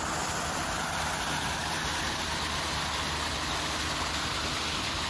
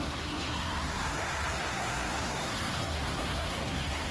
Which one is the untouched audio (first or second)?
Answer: first